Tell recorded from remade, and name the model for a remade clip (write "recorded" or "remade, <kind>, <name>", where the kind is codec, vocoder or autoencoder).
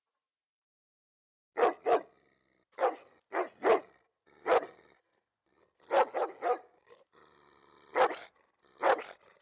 recorded